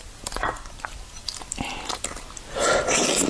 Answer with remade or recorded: recorded